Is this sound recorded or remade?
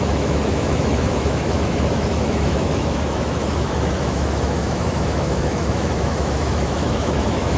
remade